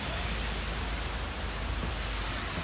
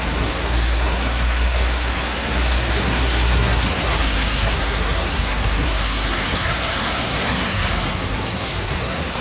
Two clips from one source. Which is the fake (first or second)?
second